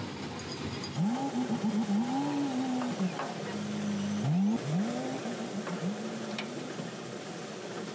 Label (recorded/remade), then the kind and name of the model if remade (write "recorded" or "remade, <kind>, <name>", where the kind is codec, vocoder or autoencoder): recorded